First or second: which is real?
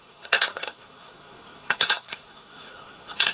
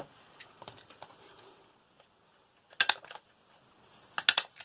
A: second